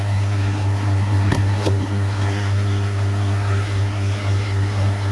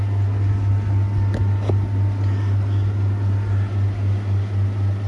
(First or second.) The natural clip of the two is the second